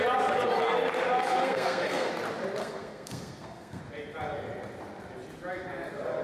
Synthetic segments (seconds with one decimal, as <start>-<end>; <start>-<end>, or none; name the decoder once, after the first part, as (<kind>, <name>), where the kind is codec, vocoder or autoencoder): 1.4-2.1 (codec, SNAC); 2.6-3.8